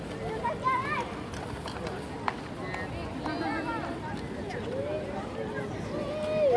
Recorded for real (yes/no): yes